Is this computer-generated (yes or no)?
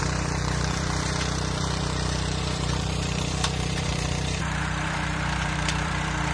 yes